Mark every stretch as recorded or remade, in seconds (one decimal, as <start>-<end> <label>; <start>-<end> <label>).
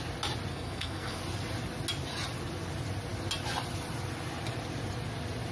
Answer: 0.0-0.5 recorded; 0.5-1.2 remade; 1.2-5.5 recorded